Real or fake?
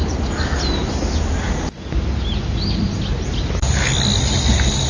real